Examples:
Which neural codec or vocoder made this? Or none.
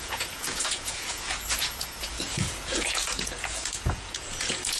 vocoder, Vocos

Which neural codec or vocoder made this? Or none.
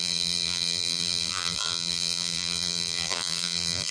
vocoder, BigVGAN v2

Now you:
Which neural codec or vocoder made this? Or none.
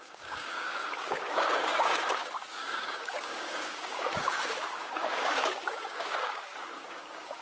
codec, DAC